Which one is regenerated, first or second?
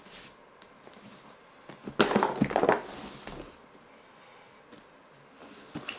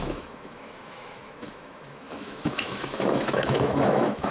second